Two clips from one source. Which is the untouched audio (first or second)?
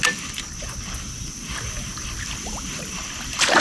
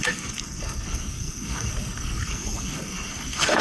first